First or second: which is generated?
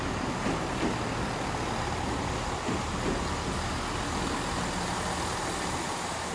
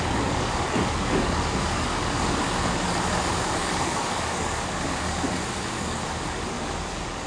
second